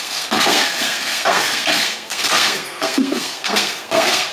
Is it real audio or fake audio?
fake